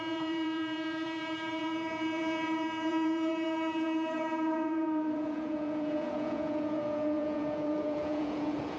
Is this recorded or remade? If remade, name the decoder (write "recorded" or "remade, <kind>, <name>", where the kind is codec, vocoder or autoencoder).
remade, vocoder, Vocos